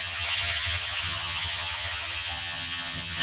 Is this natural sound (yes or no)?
no